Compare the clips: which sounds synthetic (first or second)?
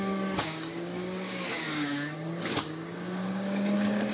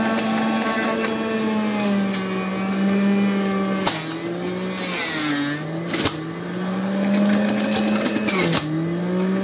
first